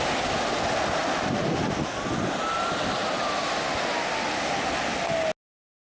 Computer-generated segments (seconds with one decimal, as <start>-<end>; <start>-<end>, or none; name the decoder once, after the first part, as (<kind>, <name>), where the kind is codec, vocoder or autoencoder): 3.0-3.6 (vocoder, BigVGAN v2)